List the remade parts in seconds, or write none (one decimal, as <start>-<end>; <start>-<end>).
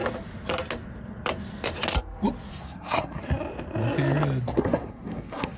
2.5-3.2; 4.5-5.6